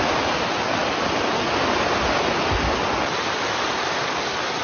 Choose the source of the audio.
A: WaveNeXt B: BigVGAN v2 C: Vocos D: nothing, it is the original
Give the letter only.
D